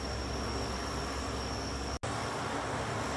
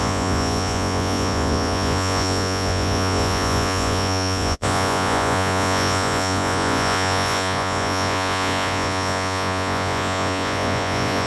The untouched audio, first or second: first